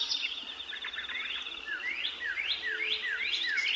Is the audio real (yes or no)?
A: yes